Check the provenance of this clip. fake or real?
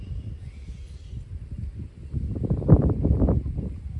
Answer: real